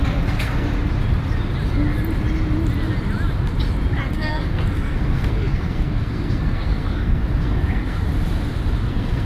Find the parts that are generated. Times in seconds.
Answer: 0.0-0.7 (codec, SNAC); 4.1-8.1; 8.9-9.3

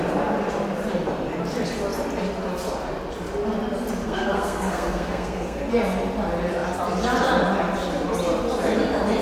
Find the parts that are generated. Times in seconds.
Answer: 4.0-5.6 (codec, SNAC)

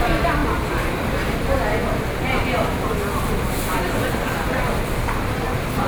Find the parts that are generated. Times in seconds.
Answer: 0.0-1.8 (vocoder, BigVGAN v2); 5.2-5.9

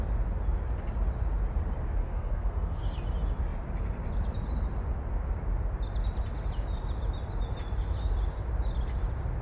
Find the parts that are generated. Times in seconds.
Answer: 2.0-2.8 (codec, SNAC)

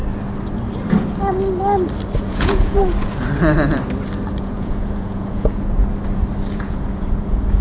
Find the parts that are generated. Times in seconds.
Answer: 2.2-2.8 (vocoder, Vocos); 4.3-5.9; 6.5-7.6

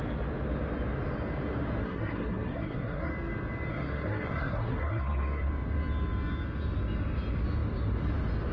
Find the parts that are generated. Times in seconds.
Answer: 1.8-3.1 (codec, SNAC); 3.7-5.5